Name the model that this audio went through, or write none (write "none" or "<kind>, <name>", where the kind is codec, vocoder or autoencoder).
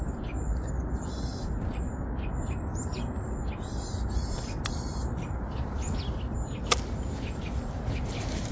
none